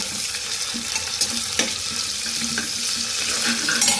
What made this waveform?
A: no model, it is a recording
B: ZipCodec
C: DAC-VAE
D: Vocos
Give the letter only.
A